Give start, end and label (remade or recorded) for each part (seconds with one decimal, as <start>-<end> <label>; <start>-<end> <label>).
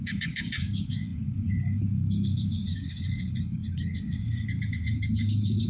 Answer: 0.0-5.7 remade